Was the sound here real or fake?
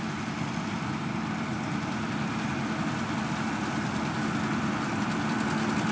real